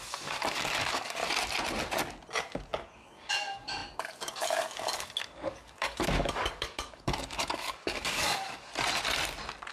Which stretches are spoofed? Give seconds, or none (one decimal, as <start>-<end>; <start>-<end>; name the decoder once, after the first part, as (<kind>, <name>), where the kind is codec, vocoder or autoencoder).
0.0-1.2 (codec, DAC); 2.4-8.7